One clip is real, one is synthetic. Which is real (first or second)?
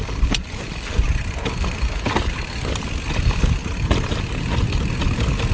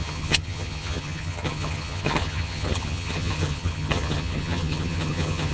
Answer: first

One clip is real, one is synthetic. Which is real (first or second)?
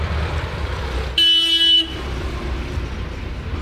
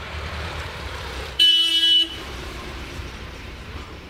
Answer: first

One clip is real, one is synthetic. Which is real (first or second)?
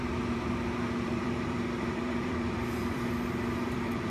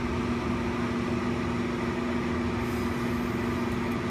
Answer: second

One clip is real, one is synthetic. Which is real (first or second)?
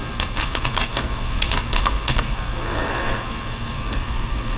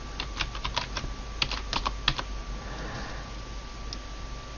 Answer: second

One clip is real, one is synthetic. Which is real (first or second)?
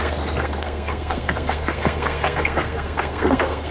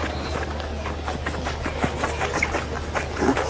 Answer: second